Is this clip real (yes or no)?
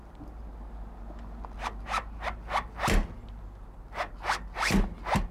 yes